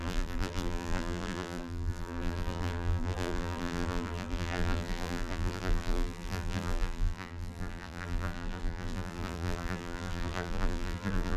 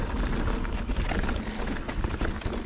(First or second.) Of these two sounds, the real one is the second